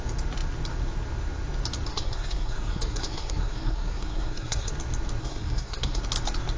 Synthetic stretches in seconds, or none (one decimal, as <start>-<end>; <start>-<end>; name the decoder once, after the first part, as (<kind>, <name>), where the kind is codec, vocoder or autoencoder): 1.9-4.7 (codec, SNAC); 5.2-6.0